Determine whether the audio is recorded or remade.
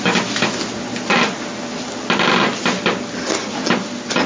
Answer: recorded